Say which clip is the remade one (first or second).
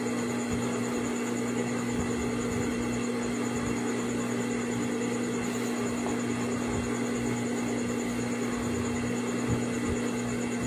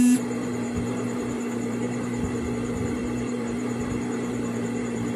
second